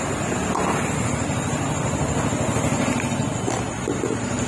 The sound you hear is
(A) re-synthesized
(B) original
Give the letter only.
B